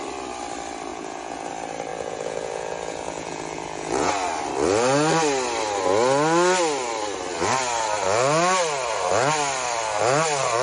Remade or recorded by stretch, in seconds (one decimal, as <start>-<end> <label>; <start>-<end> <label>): 0.0-0.9 recorded; 0.9-1.5 remade; 1.5-1.9 recorded; 1.9-4.1 remade; 4.1-10.6 recorded